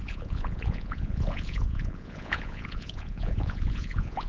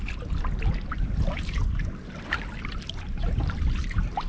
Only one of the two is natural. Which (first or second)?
second